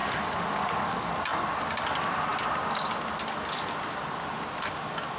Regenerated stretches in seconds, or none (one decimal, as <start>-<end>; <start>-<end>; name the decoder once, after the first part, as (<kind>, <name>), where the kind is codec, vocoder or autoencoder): 0.0-1.1 (codec, DAC)